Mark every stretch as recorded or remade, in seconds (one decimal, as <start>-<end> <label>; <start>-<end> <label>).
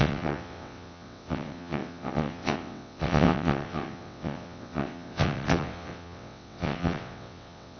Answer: 0.0-7.8 remade